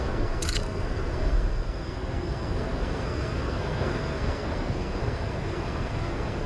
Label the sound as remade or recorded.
remade